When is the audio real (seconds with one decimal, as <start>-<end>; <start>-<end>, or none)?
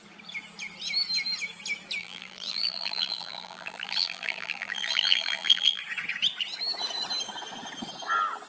0.0-2.0; 5.8-8.5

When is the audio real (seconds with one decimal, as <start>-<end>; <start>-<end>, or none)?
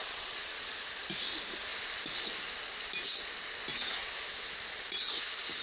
0.7-5.6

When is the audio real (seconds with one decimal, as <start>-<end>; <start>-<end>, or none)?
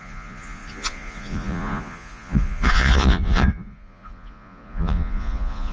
none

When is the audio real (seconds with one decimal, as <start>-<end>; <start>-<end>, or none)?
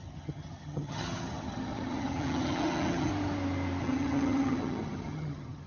3.1-3.8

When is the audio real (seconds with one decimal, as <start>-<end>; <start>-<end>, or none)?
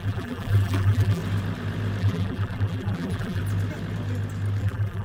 1.2-2.0; 3.4-4.6